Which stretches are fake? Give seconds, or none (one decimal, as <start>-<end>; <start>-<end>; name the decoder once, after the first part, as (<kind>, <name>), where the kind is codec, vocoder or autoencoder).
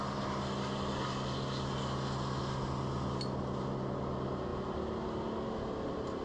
none